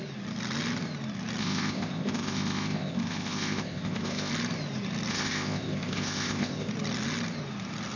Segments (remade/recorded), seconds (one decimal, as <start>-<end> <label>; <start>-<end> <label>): 0.0-1.4 recorded; 1.4-4.3 remade; 4.3-5.1 recorded; 5.1-6.7 remade; 6.7-8.0 recorded